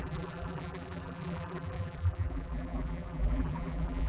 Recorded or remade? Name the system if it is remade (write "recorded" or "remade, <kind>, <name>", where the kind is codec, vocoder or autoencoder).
remade, vocoder, BigVGAN v2